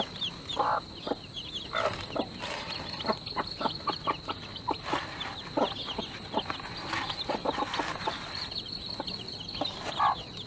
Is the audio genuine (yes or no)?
yes